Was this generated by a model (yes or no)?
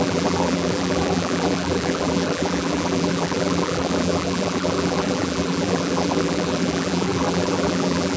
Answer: yes